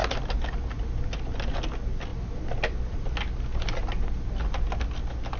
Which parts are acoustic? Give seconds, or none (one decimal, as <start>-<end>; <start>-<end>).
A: 0.0-5.4